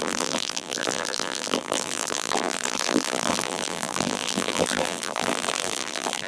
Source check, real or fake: fake